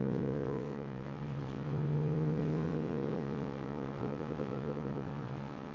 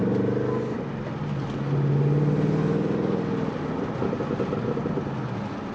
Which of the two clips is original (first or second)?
second